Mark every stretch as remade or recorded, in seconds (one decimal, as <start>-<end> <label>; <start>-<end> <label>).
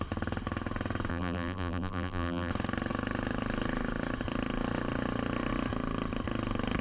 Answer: 0.0-1.1 recorded; 1.1-2.5 remade; 2.5-6.8 recorded